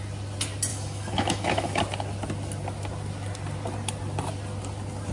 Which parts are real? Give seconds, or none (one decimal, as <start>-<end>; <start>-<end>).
0.0-0.7; 1.8-5.1